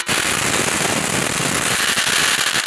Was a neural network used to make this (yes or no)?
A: no